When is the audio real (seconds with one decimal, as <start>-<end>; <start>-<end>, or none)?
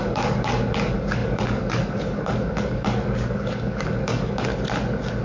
4.5-5.2